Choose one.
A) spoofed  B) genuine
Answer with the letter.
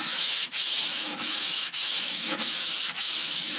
A